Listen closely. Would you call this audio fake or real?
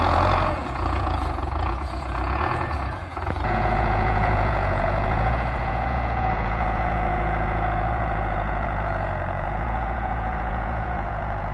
fake